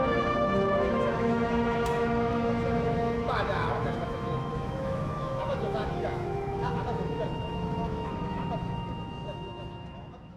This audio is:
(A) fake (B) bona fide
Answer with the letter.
A